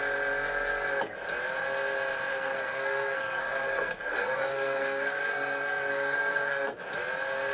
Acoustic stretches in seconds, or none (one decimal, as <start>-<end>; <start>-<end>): 0.0-2.3; 6.8-7.5